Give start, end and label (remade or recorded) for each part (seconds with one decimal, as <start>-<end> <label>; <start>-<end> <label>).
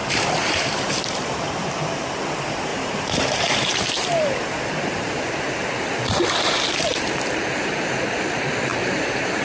0.0-1.7 remade; 1.7-2.7 recorded; 2.7-5.5 remade; 5.5-6.9 recorded; 6.9-7.9 remade; 7.9-8.7 recorded; 8.7-9.4 remade